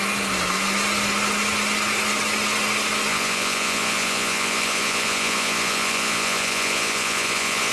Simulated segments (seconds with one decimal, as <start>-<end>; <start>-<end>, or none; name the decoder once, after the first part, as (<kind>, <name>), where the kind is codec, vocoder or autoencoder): 3.1-7.7 (vocoder, Vocos)